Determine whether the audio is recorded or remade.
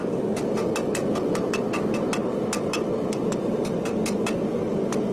recorded